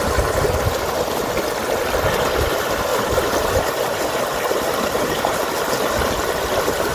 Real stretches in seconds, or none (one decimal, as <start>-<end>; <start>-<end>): 0.0-2.9; 5.7-6.9